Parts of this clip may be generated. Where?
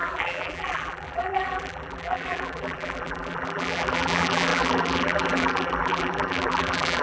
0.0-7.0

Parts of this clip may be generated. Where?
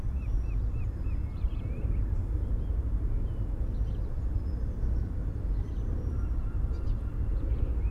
0.0-2.2; 3.9-7.9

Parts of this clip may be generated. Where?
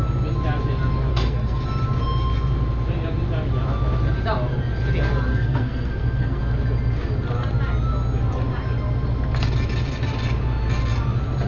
1.1-1.6; 5.3-6.4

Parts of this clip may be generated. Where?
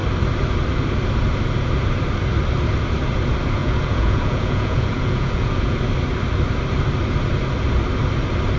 3.6-5.8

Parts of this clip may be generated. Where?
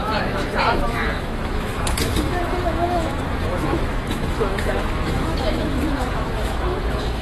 0.0-7.2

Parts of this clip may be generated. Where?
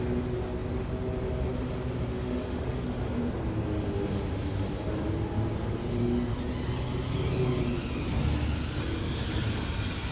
2.1-3.3